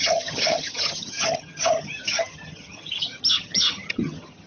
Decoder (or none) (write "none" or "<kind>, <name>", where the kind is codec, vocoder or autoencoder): vocoder, HiFi-GAN